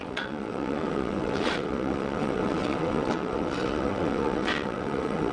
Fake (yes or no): yes